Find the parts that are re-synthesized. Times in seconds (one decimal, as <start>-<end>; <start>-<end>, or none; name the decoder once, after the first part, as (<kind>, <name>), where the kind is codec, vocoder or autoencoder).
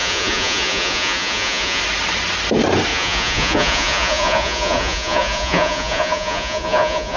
0.0-1.8 (vocoder, Vocos); 2.9-7.2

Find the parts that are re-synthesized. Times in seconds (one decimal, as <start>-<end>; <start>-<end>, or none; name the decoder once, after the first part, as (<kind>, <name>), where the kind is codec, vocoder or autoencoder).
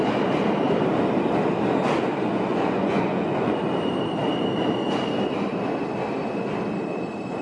2.5-3.6 (vocoder, Vocos)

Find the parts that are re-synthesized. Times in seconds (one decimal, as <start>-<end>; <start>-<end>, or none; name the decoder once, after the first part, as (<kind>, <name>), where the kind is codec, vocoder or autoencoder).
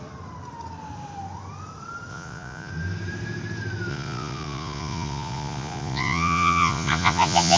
2.1-2.7 (vocoder, Vocos); 3.9-7.6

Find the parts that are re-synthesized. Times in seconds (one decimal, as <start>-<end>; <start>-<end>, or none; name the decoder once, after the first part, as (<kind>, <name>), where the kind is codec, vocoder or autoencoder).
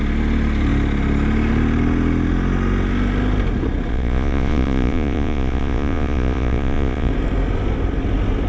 3.9-7.1 (vocoder, Vocos)